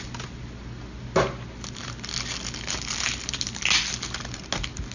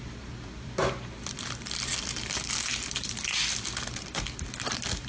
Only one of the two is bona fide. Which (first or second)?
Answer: first